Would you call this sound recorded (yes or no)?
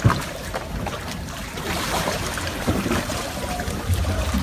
no